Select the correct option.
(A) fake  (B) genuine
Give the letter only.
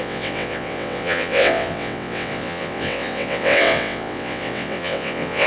A